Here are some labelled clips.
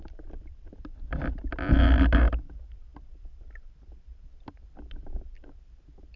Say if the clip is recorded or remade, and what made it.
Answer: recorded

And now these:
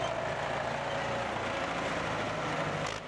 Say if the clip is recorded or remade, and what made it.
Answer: recorded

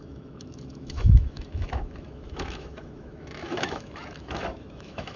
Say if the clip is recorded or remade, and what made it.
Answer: remade, autoencoder, DAC-VAE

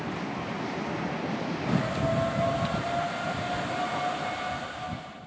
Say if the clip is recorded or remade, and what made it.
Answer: recorded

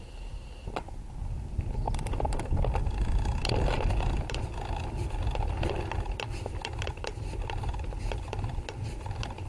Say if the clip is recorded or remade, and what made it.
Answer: recorded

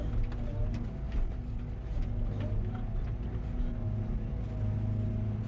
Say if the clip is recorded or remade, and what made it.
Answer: recorded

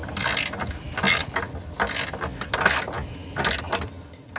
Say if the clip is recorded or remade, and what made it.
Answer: recorded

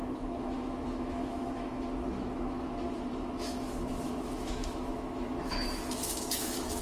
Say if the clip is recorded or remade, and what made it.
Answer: remade, autoencoder, DAC-VAE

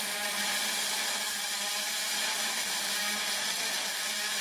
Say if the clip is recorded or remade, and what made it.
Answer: recorded